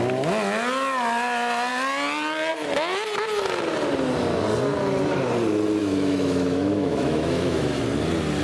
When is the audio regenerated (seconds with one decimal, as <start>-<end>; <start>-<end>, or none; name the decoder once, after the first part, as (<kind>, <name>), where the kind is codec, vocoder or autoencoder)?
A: 5.8-7.8 (autoencoder, DAC-VAE)